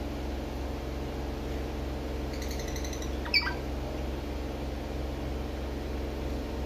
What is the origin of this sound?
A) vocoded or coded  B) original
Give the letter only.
B